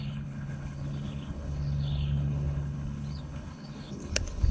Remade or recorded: remade